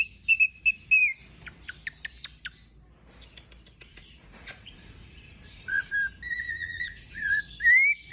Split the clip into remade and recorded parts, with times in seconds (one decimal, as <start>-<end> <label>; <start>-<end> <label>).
0.0-3.9 recorded; 3.9-5.9 remade; 5.9-6.6 recorded; 6.6-7.4 remade; 7.4-8.1 recorded